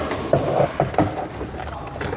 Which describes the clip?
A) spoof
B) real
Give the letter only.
B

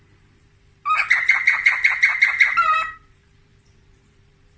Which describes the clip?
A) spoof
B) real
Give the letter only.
A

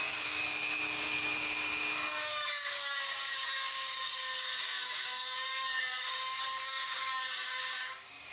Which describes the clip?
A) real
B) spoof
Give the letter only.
B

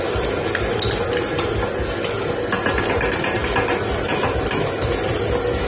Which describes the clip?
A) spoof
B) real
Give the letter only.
B